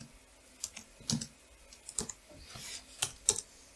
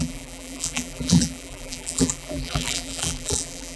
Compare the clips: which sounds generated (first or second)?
second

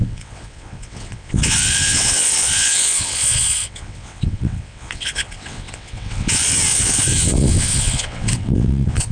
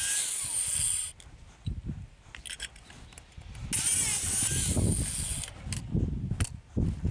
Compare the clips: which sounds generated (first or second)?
first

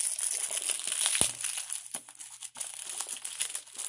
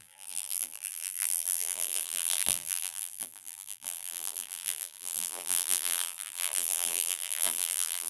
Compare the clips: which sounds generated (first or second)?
second